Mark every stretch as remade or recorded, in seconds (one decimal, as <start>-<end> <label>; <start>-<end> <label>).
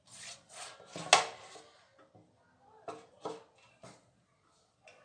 0.0-0.7 remade; 0.7-3.7 recorded; 3.7-5.0 remade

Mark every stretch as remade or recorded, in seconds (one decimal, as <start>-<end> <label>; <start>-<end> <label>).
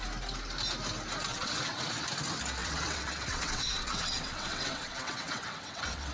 0.0-1.3 recorded; 1.3-1.9 remade; 1.9-2.6 recorded; 2.6-6.1 remade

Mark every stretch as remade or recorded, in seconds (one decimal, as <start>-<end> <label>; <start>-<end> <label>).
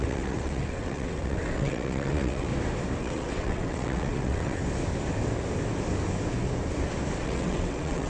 0.0-2.5 remade; 2.5-3.0 recorded; 3.0-4.6 remade; 4.6-7.2 recorded; 7.2-8.1 remade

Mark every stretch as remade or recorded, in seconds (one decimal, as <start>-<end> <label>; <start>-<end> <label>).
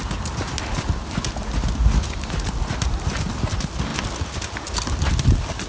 0.0-5.7 recorded